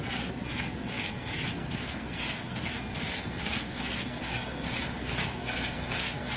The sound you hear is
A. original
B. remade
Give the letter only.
B